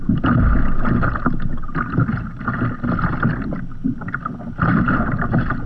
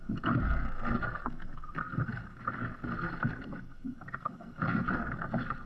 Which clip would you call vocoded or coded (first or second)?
second